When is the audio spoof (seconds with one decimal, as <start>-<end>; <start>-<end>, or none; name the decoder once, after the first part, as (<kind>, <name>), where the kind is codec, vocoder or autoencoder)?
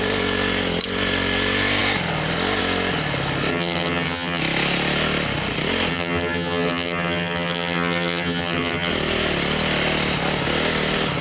3.5-4.4 (vocoder, HiFi-GAN); 5.9-8.9